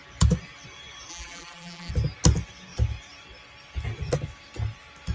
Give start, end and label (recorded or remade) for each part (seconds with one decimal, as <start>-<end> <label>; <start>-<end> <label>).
0.0-1.1 recorded; 1.1-1.9 remade; 1.9-5.1 recorded